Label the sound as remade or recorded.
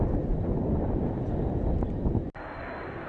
recorded